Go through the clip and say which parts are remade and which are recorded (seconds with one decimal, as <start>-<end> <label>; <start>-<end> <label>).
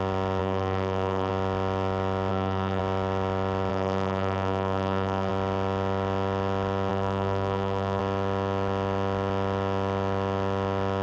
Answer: 0.0-0.4 recorded; 0.4-1.3 remade; 1.3-2.3 recorded; 2.3-2.8 remade; 2.8-3.7 recorded; 3.7-5.3 remade; 5.3-6.9 recorded; 6.9-8.0 remade; 8.0-11.0 recorded